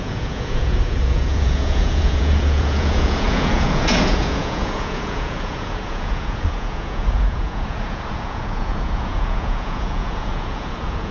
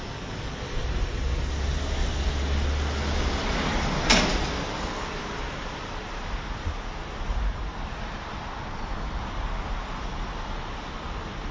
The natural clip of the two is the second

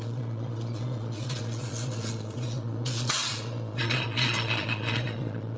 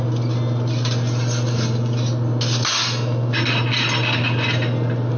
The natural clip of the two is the second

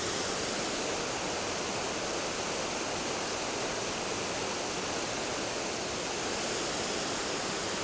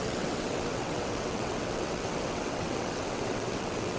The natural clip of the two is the first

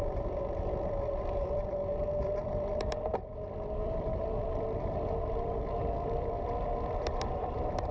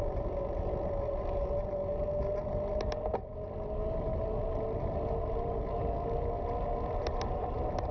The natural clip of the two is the second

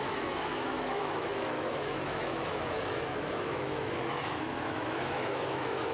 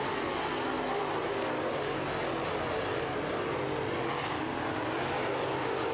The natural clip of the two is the second